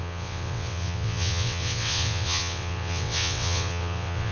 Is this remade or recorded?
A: remade